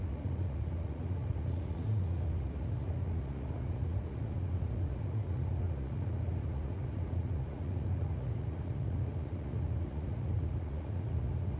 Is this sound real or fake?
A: fake